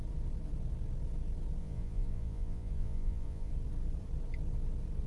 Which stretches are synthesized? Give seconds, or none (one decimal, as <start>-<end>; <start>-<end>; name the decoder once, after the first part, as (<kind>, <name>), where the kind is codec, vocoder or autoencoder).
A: 1.6-3.5 (vocoder, Vocos)